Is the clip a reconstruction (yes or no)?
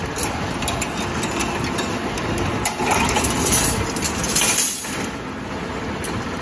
no